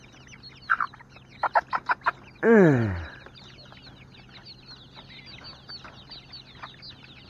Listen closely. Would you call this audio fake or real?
real